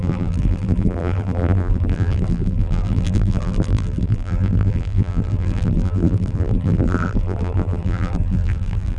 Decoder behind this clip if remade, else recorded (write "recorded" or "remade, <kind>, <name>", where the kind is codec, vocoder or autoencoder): remade, vocoder, BigVGAN v2